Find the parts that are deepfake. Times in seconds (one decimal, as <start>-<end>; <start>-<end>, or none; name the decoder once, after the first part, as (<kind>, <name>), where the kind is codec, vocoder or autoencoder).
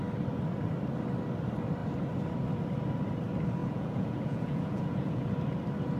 3.6-5.3 (vocoder, Vocos)